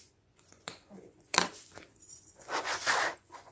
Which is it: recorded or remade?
remade